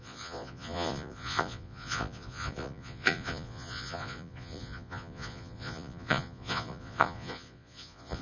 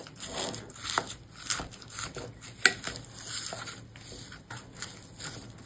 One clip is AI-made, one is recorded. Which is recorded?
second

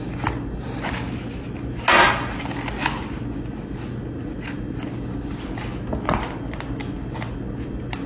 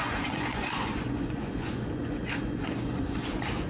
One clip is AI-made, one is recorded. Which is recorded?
first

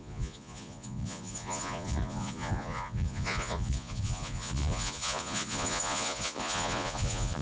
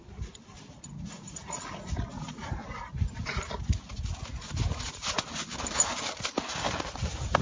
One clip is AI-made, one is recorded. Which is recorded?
second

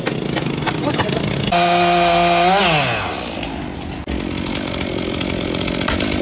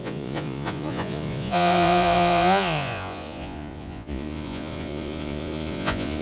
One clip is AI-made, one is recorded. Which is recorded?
first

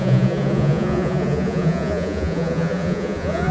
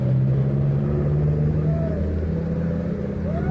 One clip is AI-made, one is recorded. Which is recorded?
second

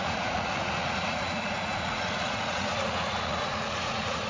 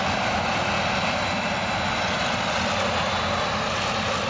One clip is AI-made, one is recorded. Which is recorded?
second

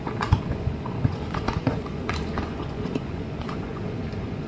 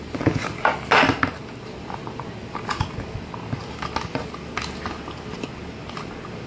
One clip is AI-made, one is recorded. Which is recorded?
second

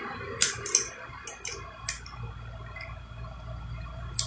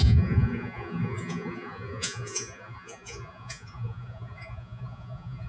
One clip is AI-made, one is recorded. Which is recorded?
first